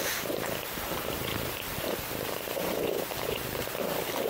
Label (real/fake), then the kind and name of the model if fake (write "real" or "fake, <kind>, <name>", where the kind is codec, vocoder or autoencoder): fake, vocoder, BigVGAN v2